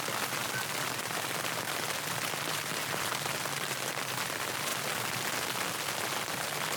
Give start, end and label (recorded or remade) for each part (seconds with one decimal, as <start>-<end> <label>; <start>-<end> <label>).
0.0-6.8 recorded